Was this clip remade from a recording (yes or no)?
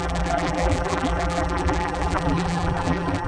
yes